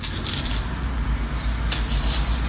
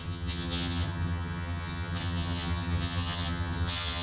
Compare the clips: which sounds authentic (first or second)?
first